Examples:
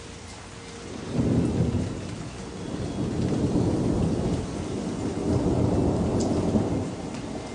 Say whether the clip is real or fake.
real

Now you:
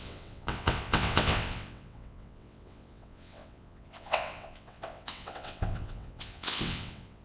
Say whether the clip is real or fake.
fake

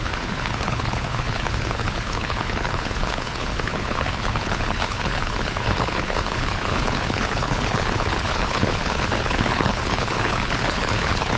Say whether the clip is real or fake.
fake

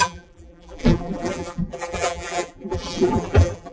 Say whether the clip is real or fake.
fake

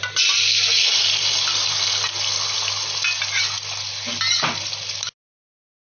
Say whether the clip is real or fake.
real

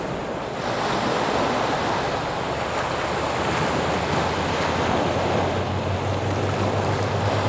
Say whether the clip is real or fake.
real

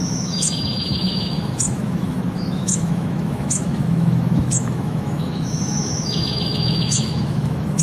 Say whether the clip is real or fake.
fake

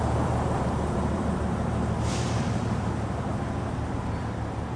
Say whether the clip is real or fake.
fake